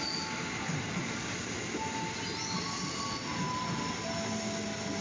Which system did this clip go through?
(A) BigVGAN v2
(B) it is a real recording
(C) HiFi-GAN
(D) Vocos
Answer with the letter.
B